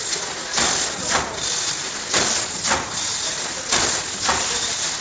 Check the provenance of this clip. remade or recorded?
recorded